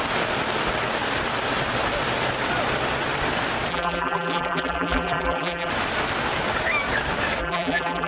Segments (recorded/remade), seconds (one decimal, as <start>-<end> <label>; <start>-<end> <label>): 0.0-3.7 recorded; 3.7-5.7 remade; 5.7-7.4 recorded; 7.4-8.1 remade